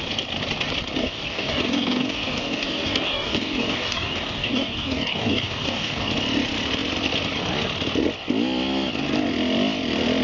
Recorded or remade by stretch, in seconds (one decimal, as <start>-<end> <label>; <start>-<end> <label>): 0.0-1.0 recorded; 1.0-6.1 remade; 6.1-10.2 recorded